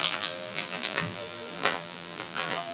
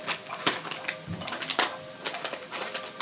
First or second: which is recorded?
second